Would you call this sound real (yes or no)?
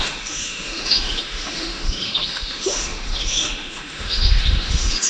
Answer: no